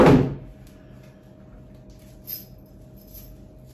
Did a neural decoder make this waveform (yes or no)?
no